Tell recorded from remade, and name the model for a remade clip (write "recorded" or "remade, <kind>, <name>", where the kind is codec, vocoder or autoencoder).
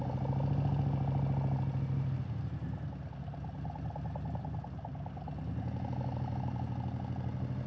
recorded